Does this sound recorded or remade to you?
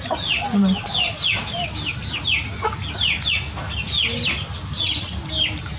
recorded